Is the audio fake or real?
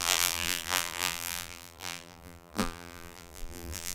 fake